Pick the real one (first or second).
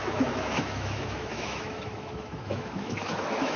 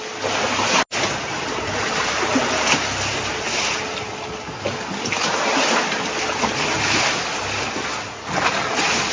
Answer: second